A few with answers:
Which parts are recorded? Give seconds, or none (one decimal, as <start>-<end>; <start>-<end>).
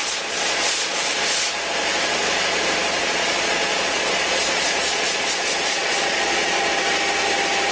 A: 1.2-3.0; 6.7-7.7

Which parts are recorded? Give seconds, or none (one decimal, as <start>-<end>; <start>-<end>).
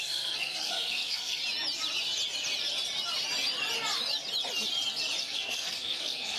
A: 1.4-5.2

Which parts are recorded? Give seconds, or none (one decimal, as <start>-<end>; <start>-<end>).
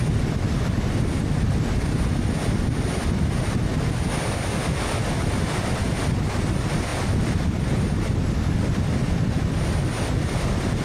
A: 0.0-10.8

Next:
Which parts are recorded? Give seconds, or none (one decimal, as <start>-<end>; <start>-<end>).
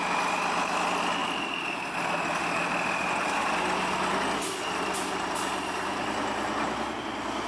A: 0.0-7.5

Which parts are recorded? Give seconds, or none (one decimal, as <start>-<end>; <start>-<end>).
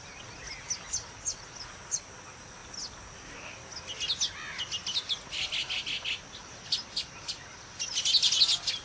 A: 0.0-8.8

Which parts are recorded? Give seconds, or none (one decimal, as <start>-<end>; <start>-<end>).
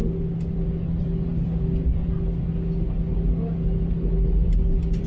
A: 0.0-5.1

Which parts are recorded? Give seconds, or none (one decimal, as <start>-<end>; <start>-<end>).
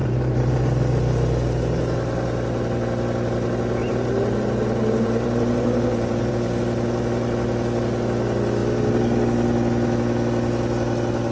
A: 0.6-3.8; 6.3-11.3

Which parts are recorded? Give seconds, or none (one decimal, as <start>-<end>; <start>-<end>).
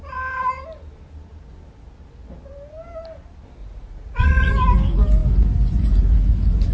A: 0.0-3.6; 4.5-6.7